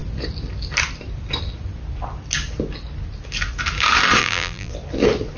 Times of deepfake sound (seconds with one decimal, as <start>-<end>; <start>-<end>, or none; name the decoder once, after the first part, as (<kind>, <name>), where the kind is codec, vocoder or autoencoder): 4.2-4.7 (vocoder, BigVGAN v2)